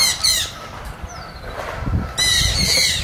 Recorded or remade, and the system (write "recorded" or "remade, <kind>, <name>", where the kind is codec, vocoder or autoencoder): remade, vocoder, BigVGAN v2